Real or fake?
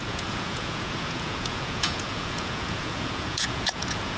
fake